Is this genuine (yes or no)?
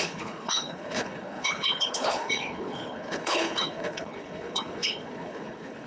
no